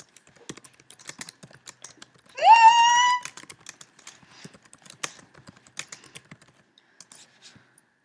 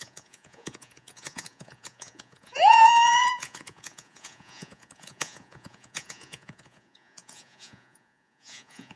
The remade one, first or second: second